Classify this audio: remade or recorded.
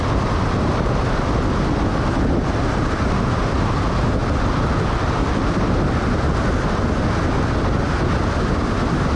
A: recorded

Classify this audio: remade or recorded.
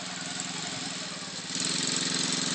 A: recorded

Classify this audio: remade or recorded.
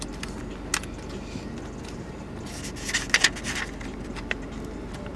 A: recorded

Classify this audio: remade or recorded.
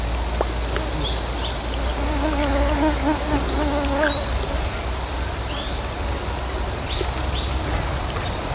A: recorded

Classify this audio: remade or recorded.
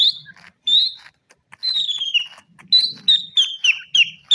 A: recorded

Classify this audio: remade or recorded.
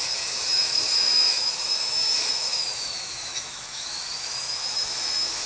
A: remade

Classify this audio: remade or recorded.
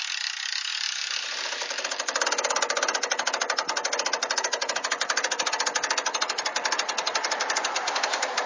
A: recorded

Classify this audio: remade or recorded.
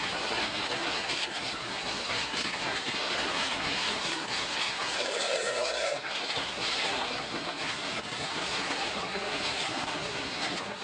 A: remade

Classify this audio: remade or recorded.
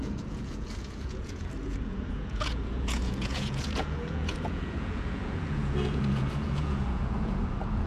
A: remade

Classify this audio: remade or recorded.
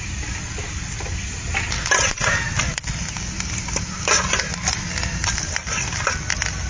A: recorded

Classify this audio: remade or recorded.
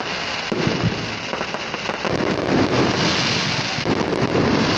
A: recorded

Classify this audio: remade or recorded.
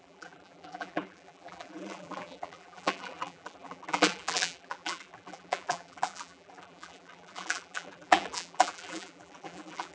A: remade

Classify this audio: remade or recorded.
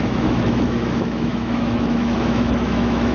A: remade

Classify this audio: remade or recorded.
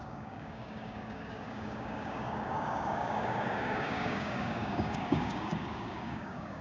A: remade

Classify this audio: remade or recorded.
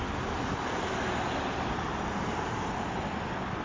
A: recorded